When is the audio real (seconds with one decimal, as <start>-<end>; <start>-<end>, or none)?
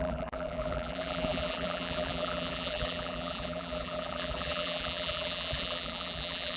none